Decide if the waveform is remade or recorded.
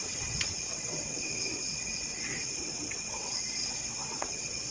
remade